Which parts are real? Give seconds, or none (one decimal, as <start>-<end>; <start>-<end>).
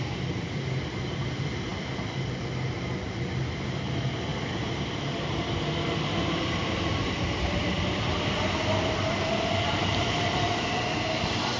4.3-4.8